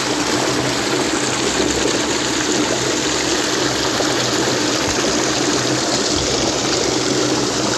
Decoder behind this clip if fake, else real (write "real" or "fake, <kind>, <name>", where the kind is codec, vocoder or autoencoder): real